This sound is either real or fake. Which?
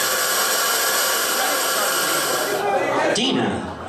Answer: real